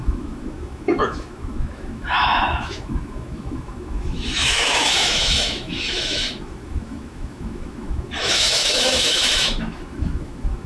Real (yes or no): no